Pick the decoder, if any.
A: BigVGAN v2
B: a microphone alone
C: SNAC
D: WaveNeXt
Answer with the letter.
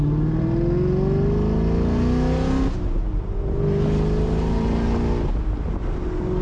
B